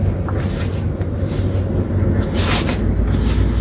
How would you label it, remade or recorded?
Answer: recorded